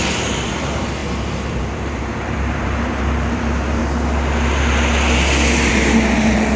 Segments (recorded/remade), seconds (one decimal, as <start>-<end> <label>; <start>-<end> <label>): 0.0-3.8 remade; 3.8-5.7 recorded; 5.7-6.6 remade